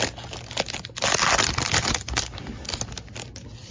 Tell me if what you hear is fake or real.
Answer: real